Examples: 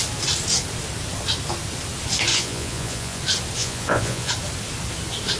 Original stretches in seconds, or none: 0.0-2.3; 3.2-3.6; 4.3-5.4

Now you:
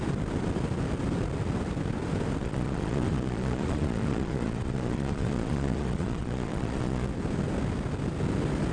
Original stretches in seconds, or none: 0.0-2.4; 7.1-8.7

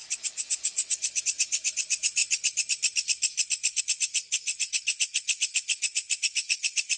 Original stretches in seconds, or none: 2.2-3.8